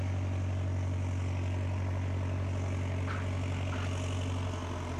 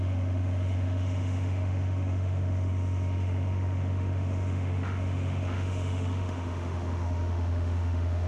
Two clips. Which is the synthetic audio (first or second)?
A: second